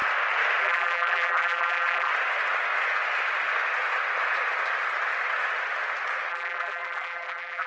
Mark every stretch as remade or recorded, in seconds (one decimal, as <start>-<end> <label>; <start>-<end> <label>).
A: 0.0-0.6 recorded; 0.6-2.1 remade; 2.1-6.3 recorded; 6.3-7.7 remade